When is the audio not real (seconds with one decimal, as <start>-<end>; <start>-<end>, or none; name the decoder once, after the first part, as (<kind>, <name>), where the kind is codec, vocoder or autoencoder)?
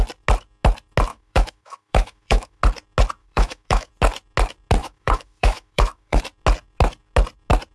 1.1-2.6 (autoencoder, DAC-VAE); 3.2-3.9; 4.8-6.2